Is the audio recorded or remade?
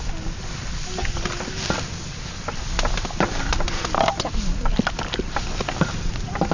recorded